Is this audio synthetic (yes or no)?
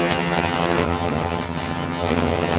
yes